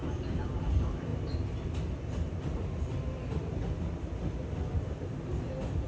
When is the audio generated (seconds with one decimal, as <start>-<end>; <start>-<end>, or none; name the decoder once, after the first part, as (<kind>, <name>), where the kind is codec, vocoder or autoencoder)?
none